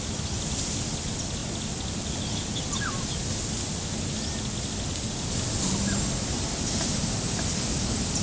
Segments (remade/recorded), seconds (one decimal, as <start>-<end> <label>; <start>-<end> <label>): 0.0-8.2 recorded